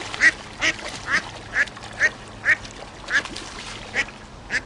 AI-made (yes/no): no